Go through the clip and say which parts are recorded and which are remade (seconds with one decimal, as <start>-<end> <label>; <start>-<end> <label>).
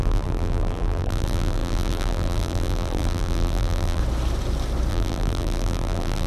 0.0-4.0 remade; 4.0-4.9 recorded; 4.9-6.3 remade